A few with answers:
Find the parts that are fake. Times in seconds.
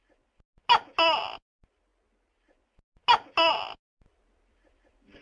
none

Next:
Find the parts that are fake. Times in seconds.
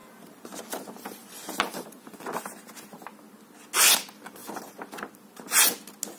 0.0-2.7 (vocoder, BigVGAN v2)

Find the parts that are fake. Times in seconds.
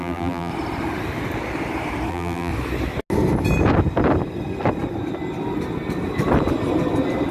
0.0-0.5 (vocoder, BigVGAN v2); 2.1-2.5